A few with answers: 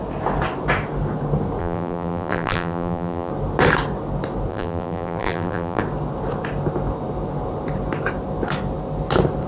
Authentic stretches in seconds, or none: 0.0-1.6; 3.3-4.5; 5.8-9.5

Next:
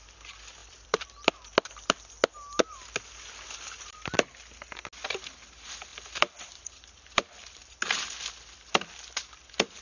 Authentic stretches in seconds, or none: 0.0-0.6; 1.3-5.9; 7.7-9.8

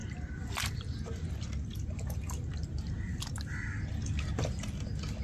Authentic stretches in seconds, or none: 3.1-5.2

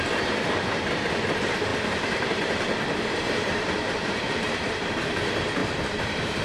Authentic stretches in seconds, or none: none

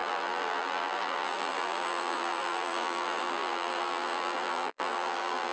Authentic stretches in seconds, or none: none

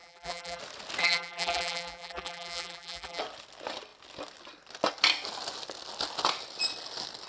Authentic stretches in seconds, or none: 0.6-1.0; 3.2-7.3

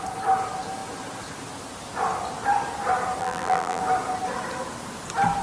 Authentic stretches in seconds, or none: 0.0-3.2; 3.8-5.4

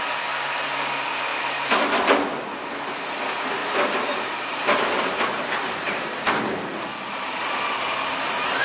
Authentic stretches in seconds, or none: 0.0-3.6; 6.3-8.6